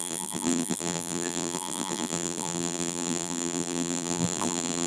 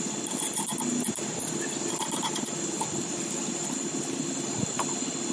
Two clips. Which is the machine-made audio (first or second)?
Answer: first